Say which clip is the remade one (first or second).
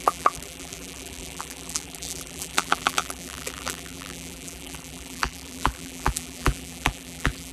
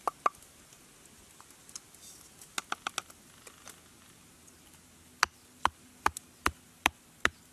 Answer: first